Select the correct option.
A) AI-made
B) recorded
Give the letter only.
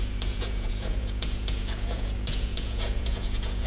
A